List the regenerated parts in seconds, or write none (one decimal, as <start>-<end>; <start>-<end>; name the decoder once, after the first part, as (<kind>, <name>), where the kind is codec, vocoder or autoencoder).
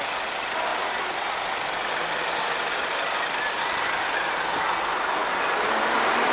none